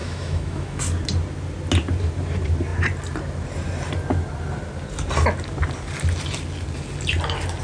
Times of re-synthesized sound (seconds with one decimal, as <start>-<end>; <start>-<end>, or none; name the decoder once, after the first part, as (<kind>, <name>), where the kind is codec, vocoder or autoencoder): 0.0-0.8 (autoencoder, DAC-VAE)